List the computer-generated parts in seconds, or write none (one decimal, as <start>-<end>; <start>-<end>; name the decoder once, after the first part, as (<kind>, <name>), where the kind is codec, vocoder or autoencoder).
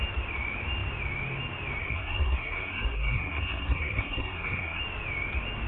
1.8-4.8 (codec, SNAC)